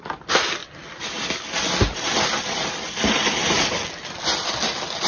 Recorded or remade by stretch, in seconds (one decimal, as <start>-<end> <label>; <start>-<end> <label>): 0.0-0.6 recorded; 0.6-3.3 remade; 3.3-5.1 recorded

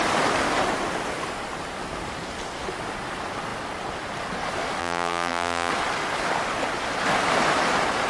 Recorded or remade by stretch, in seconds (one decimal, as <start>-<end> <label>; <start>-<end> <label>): 0.0-4.8 recorded; 4.8-5.7 remade; 5.7-8.1 recorded

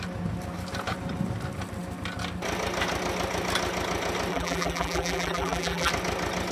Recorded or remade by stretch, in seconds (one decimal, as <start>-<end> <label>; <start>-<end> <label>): 0.0-4.3 recorded; 4.3-5.9 remade; 5.9-6.5 recorded